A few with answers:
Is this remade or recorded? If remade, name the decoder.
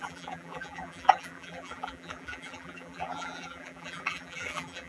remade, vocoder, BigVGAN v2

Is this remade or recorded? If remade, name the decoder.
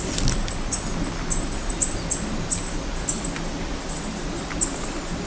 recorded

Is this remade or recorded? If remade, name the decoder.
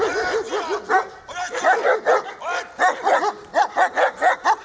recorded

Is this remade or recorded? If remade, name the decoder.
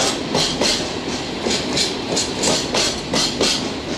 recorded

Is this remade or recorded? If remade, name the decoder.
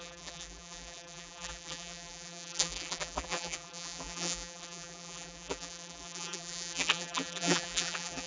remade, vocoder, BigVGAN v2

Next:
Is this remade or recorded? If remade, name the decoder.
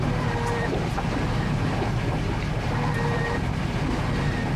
recorded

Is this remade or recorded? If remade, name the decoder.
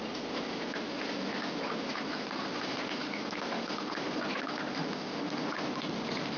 recorded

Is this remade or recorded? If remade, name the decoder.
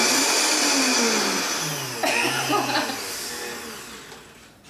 recorded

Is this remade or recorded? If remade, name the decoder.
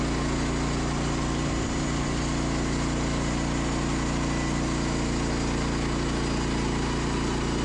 recorded